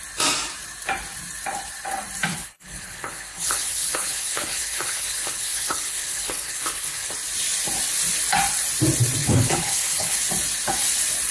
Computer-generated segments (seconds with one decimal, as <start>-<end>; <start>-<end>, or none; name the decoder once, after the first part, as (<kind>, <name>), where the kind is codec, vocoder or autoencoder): 2.3-7.1 (codec, HILCodec); 9.2-10.2